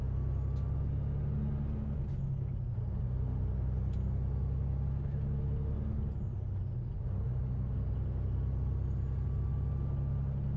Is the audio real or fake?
real